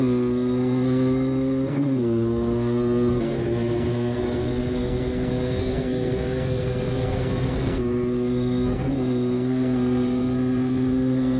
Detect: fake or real fake